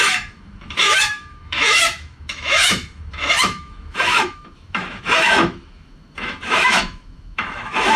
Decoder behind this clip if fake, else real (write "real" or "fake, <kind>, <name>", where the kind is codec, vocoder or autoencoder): fake, autoencoder, DAC-VAE